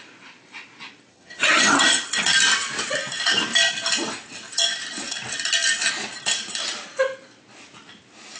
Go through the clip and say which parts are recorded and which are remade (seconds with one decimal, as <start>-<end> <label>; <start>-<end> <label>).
0.0-1.1 recorded; 1.1-2.0 remade; 2.0-8.4 recorded